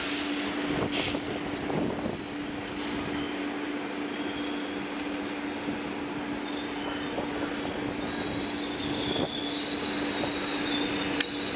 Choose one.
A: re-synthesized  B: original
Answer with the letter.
B